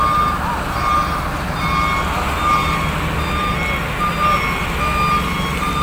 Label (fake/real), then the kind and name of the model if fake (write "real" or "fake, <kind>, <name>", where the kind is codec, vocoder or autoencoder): real